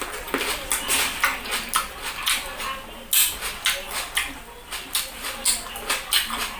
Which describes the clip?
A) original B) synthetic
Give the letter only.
A